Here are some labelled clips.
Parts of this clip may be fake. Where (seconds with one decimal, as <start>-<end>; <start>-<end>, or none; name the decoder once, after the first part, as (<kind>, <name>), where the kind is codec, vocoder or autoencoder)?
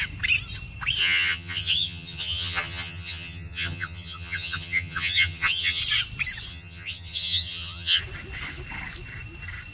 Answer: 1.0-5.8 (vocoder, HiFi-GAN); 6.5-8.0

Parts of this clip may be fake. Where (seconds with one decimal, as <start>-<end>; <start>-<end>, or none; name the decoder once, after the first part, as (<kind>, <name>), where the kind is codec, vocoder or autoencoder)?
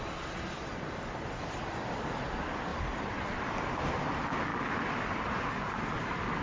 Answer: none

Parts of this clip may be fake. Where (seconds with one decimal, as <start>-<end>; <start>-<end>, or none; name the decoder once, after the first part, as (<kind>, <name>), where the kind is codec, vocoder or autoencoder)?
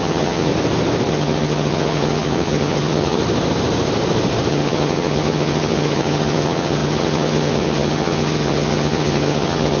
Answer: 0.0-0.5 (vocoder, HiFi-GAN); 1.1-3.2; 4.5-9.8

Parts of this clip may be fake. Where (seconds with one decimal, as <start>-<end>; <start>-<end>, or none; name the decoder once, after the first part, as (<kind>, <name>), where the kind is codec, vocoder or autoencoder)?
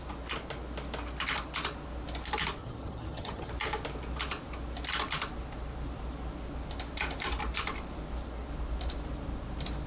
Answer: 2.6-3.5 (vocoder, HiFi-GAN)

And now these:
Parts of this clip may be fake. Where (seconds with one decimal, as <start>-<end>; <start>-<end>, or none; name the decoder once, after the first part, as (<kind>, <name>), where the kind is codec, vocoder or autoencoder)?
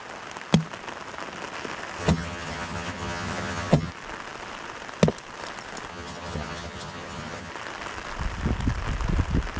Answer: 2.0-3.9 (vocoder, HiFi-GAN); 5.9-7.5